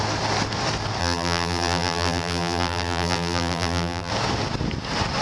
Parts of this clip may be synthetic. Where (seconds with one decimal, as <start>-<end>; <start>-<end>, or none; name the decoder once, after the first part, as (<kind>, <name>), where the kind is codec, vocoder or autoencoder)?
1.0-4.1 (vocoder, BigVGAN v2)